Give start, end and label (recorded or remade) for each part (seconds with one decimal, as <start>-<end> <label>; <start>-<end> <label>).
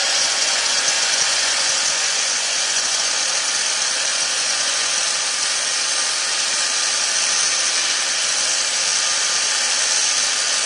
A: 0.0-3.1 remade; 3.1-4.1 recorded; 4.1-4.9 remade; 4.9-10.7 recorded